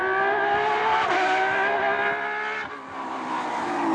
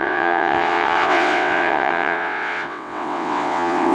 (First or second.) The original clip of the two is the first